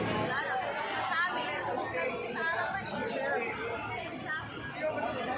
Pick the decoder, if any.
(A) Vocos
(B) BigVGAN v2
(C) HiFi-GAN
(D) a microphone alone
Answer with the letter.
D